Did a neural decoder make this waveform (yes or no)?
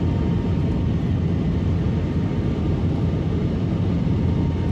no